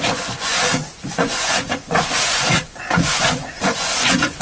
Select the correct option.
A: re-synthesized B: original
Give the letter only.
A